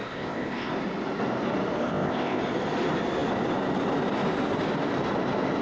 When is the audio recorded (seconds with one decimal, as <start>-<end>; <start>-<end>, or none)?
0.7-1.8; 2.4-5.6